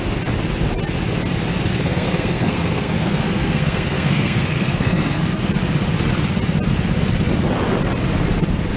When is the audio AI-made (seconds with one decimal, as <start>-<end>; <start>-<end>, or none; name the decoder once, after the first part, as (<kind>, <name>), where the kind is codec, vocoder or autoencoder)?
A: 1.7-5.4 (codec, SNAC)